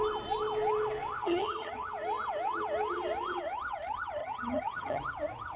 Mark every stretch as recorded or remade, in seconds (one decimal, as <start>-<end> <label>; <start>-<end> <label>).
0.0-1.2 recorded; 1.2-1.9 remade; 1.9-4.2 recorded; 4.2-5.0 remade; 5.0-5.6 recorded